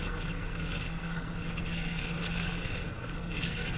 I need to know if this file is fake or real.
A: fake